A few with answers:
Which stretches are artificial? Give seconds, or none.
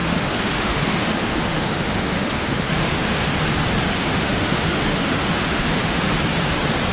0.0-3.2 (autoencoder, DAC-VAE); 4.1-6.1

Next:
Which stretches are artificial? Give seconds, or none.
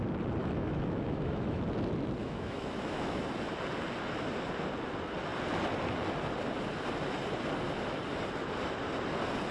0.4-1.6 (autoencoder, DAC-VAE); 2.2-3.2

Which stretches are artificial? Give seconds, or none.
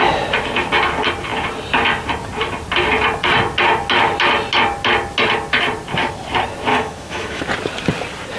6.7-7.4 (autoencoder, DAC-VAE)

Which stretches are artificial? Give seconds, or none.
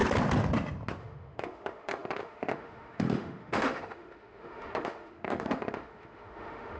1.0-6.8 (autoencoder, DAC-VAE)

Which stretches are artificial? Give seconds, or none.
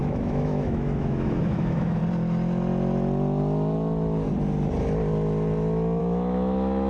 0.0-2.0 (autoencoder, DAC-VAE); 6.0-6.9